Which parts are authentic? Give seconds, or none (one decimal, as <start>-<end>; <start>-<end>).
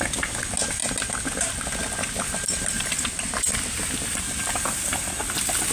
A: 0.0-5.7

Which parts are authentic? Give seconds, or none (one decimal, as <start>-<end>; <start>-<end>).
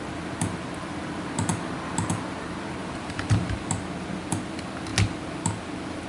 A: 0.0-2.8; 3.7-6.1